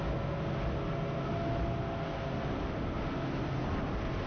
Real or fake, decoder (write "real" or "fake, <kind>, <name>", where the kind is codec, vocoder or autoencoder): real